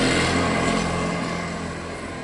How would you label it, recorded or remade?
recorded